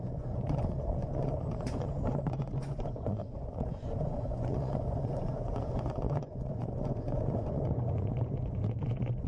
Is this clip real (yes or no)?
no